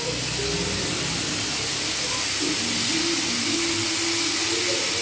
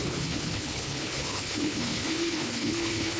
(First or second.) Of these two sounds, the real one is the first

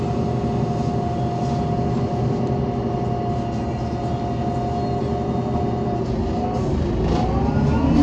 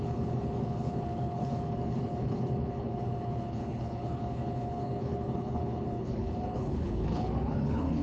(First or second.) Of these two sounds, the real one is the first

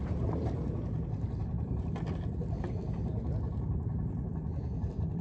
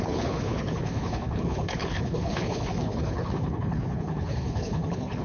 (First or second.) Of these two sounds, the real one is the first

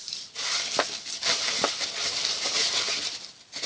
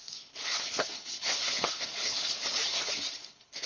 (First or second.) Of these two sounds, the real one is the first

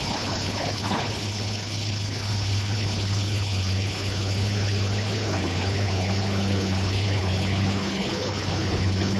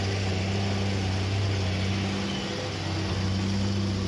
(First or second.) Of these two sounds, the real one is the second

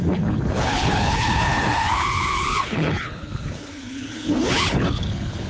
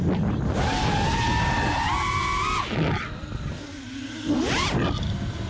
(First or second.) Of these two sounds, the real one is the second